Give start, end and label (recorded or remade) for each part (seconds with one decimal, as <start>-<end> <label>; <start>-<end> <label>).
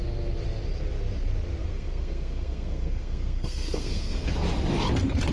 0.0-1.6 recorded; 1.6-4.3 remade; 4.3-5.3 recorded